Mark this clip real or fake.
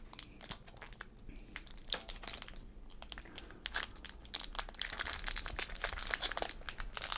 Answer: real